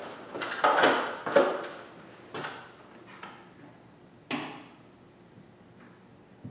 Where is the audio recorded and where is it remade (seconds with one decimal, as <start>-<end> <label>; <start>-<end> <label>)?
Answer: 0.0-6.5 recorded